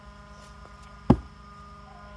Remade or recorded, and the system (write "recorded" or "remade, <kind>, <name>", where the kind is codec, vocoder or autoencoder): recorded